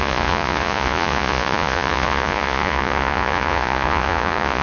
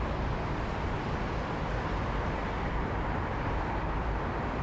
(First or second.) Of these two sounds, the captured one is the second